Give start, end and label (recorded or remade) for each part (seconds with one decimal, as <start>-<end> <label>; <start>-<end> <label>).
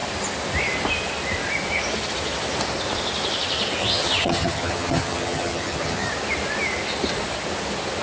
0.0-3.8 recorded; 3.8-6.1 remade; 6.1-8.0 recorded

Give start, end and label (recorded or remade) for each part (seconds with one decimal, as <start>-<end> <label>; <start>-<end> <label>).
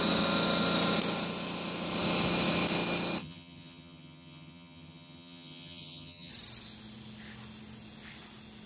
0.0-3.2 recorded; 3.2-6.3 remade; 6.3-8.7 recorded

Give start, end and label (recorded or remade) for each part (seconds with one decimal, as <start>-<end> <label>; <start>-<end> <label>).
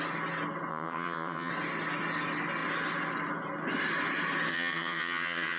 0.0-0.7 recorded; 0.7-1.5 remade; 1.5-4.5 recorded; 4.5-5.6 remade